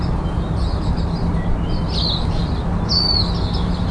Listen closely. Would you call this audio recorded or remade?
recorded